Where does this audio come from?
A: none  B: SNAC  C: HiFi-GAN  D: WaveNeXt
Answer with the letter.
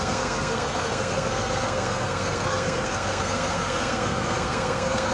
B